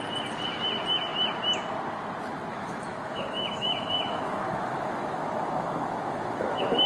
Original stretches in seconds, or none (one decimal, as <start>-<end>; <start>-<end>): 0.0-2.5